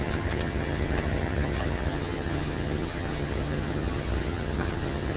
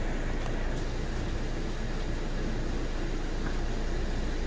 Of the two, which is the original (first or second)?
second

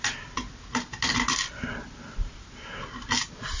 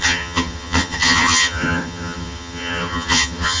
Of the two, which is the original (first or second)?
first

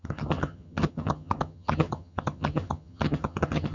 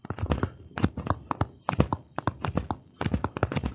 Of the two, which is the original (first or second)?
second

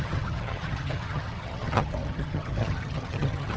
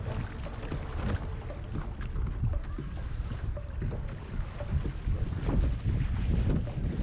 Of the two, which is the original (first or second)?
second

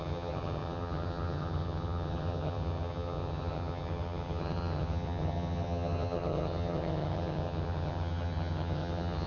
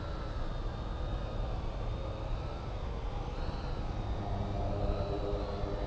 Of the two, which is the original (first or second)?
second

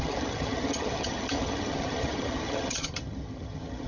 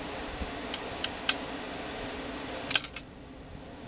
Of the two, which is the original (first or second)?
second